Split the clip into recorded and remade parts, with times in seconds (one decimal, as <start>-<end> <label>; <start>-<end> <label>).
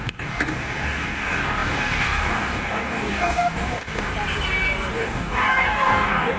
0.0-4.1 remade; 4.1-4.9 recorded; 4.9-6.4 remade